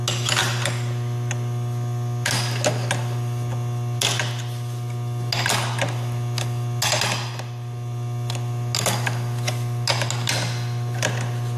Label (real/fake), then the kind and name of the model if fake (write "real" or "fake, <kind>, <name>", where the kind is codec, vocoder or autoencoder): real